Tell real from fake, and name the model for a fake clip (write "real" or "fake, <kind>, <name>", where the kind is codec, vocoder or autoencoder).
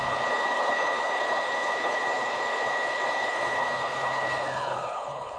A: fake, codec, HILCodec